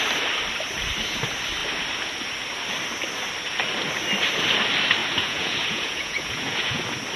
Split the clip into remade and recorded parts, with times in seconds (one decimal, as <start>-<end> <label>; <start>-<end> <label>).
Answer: 0.0-5.0 recorded; 5.0-6.8 remade; 6.8-7.2 recorded